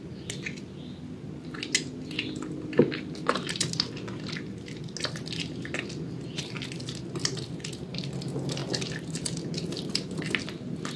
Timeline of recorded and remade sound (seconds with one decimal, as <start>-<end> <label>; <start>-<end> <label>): 0.0-11.0 recorded